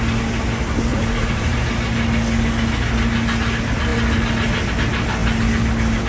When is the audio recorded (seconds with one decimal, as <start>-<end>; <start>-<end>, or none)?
0.0-0.9; 1.7-6.1